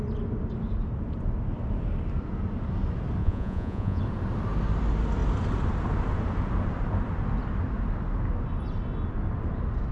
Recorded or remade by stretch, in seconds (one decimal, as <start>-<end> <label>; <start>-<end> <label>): 0.0-3.2 recorded; 3.2-4.0 remade; 4.0-9.9 recorded